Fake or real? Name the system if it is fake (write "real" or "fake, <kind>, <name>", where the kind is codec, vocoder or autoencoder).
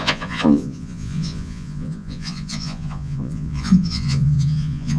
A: fake, vocoder, Vocos